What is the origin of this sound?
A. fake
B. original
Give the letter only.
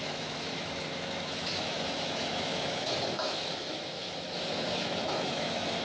A